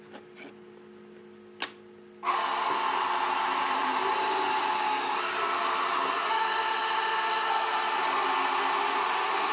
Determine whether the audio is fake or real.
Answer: real